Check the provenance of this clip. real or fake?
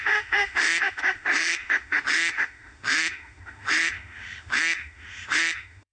fake